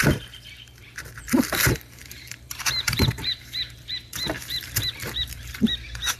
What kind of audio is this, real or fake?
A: fake